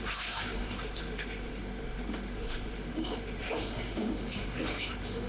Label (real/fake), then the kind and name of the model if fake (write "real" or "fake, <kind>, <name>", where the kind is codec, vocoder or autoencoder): fake, autoencoder, DAC-VAE